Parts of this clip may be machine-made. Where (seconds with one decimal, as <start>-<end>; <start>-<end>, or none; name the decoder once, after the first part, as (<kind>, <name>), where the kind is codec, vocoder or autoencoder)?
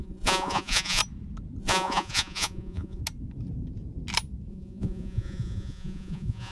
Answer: 0.0-1.0 (vocoder, Vocos); 1.6-3.0; 4.5-6.5